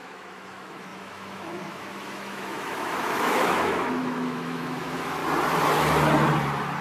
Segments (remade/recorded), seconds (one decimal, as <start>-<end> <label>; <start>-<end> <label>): 0.0-5.2 remade; 5.2-6.8 recorded